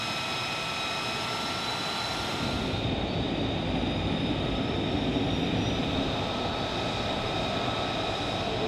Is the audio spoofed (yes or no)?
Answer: no